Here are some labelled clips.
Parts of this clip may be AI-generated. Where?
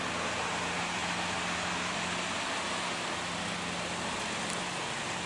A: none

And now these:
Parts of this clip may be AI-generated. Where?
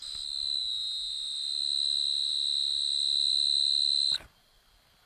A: 0.6-1.1 (vocoder, Vocos)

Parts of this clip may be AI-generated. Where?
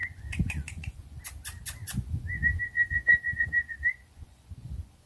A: 0.0-1.2 (vocoder, Vocos); 1.8-5.1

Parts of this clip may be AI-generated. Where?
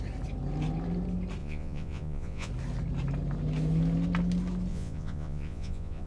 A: 1.4-2.5 (vocoder, Vocos); 4.7-6.1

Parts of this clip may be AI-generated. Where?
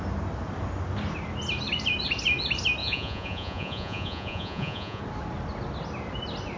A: 2.8-5.0 (vocoder, Vocos)